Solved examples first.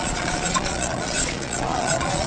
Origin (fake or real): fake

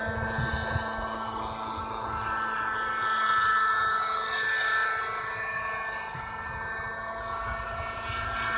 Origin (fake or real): real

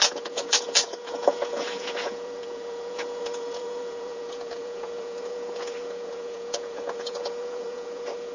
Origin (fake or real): fake